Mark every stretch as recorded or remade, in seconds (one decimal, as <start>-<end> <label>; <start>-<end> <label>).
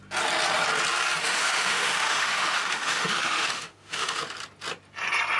0.0-1.2 recorded; 1.2-4.2 remade; 4.2-5.4 recorded